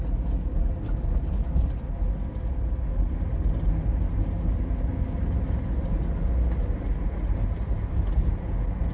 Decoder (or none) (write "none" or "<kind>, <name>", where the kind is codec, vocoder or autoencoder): none